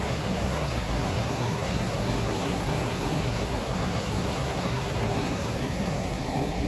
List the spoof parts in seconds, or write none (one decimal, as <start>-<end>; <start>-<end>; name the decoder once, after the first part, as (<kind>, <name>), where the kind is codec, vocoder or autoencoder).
0.0-6.7 (codec, SNAC)